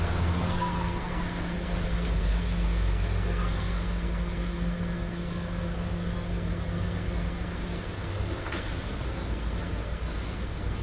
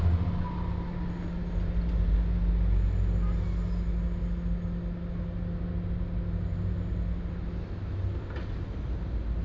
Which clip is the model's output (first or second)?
first